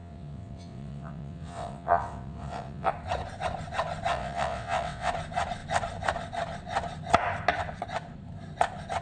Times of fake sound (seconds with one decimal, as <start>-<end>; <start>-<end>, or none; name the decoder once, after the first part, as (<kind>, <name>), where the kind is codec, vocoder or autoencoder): 0.0-2.9 (vocoder, WaveNeXt); 4.1-5.1